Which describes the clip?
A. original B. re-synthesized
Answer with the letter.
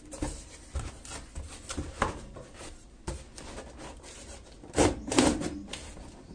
A